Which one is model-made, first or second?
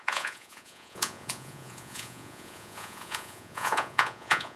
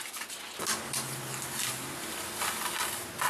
first